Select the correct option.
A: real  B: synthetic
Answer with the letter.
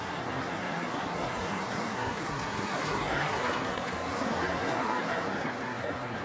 B